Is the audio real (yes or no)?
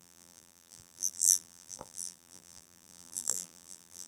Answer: no